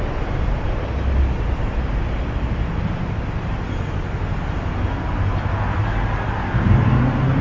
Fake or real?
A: real